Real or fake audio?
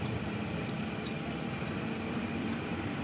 real